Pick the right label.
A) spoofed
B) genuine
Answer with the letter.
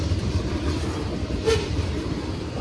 A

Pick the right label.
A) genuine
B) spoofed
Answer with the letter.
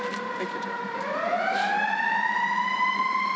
B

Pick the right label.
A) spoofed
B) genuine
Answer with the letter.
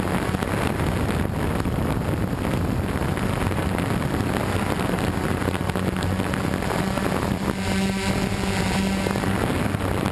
B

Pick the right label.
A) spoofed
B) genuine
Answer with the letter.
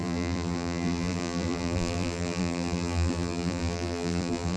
A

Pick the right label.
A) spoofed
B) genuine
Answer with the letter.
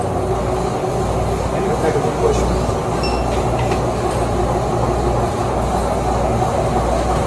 B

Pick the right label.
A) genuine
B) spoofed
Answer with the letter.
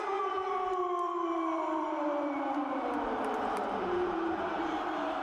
B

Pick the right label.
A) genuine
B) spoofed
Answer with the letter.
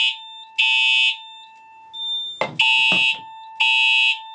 A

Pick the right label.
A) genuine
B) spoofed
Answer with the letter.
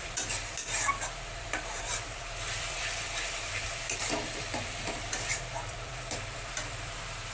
B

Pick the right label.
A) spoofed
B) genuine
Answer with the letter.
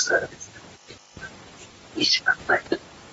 B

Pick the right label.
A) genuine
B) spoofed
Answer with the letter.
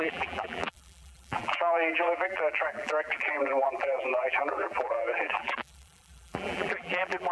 B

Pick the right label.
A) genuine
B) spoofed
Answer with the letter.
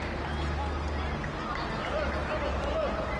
A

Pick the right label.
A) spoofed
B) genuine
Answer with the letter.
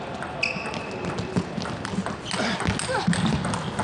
B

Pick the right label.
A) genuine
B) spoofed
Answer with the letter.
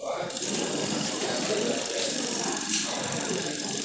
B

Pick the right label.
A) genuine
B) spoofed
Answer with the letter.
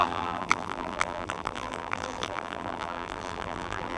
B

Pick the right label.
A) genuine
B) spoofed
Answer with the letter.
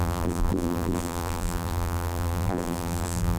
B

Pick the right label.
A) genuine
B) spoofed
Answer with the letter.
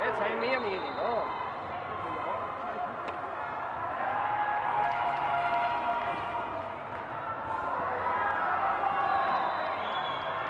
A